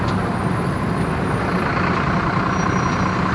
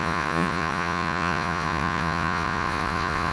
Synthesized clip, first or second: second